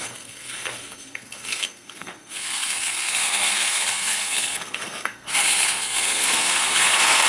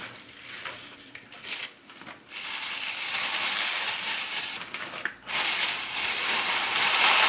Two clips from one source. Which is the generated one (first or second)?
first